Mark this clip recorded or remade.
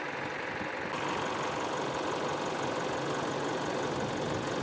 recorded